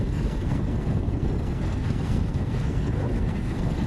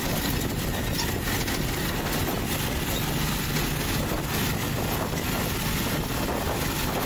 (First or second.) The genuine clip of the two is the second